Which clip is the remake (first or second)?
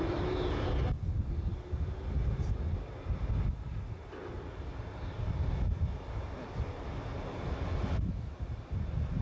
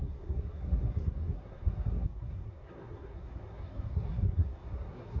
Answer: second